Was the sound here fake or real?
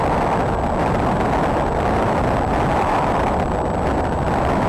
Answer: real